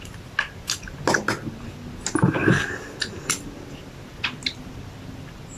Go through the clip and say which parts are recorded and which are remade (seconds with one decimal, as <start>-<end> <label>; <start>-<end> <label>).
0.0-5.6 recorded